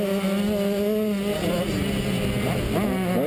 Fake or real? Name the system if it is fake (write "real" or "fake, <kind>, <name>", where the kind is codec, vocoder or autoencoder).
real